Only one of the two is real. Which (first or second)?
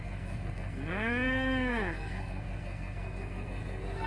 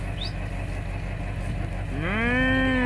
second